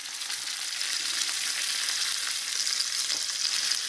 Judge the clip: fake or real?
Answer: real